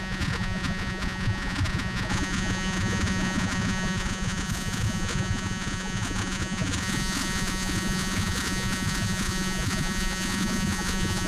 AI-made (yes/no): yes